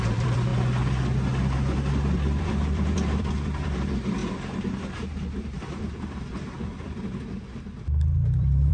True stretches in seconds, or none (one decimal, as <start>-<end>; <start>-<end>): 0.5-1.9; 4.2-5.8